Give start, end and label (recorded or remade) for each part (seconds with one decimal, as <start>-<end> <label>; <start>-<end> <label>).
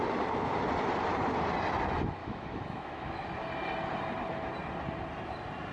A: 0.0-2.2 recorded; 2.2-3.3 remade; 3.3-5.7 recorded